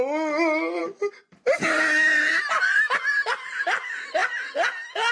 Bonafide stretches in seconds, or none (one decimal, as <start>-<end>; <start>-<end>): 0.0-5.1